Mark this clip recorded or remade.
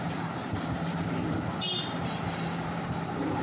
recorded